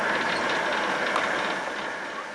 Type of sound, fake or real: real